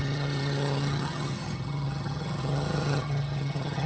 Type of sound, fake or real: fake